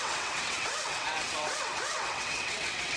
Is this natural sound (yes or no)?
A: no